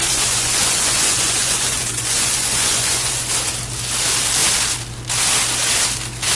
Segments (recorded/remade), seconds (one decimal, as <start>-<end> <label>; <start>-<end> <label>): 0.0-3.3 remade; 3.3-6.3 recorded